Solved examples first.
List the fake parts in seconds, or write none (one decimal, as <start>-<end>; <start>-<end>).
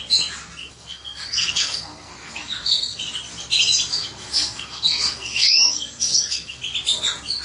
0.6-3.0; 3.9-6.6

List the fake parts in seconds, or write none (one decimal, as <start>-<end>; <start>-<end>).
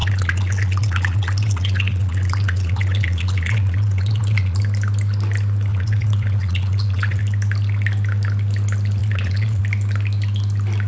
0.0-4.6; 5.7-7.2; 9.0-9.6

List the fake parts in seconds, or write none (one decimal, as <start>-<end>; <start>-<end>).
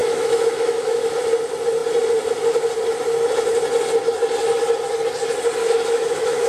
0.0-1.1; 5.6-6.5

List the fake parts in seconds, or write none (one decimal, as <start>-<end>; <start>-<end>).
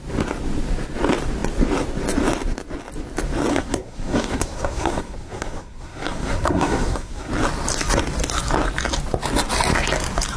3.5-7.3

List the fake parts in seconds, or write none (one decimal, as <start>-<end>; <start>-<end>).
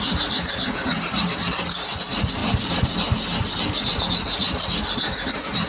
none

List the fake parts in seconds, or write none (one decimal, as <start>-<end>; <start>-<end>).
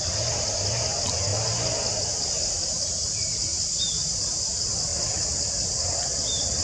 none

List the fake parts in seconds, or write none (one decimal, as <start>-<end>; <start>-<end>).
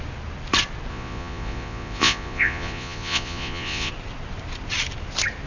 0.9-3.9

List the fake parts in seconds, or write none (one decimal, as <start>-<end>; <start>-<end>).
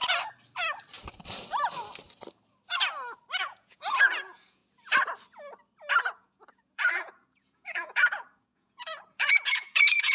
3.4-4.6; 6.1-10.1